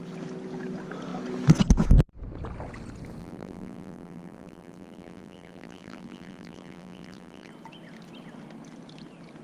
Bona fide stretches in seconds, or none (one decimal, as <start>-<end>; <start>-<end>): 0.0-3.2; 7.5-9.4